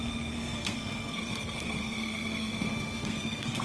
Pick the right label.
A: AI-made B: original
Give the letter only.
A